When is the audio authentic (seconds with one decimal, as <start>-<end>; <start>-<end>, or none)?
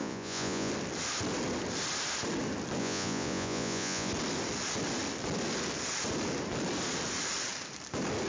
0.7-2.8; 4.1-8.3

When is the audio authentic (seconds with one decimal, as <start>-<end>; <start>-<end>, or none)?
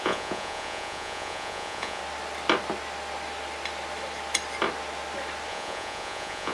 2.0-5.5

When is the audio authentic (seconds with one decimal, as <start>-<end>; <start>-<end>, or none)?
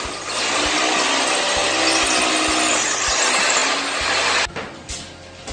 0.0-5.5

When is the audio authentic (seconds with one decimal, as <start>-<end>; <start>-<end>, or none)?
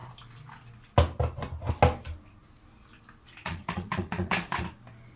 0.0-3.4; 4.6-5.2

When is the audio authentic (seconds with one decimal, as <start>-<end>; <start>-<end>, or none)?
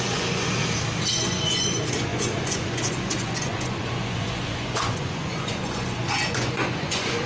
0.6-1.1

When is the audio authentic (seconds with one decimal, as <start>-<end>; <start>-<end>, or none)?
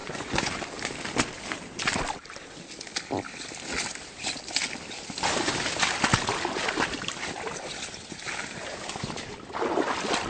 0.5-10.3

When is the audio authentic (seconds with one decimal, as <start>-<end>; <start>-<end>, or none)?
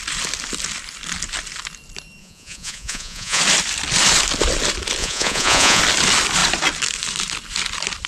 0.0-2.2; 3.4-5.0; 5.8-8.1